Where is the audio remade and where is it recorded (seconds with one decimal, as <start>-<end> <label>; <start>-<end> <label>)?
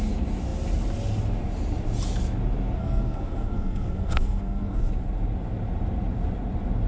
0.0-2.8 recorded; 2.8-4.9 remade; 4.9-6.9 recorded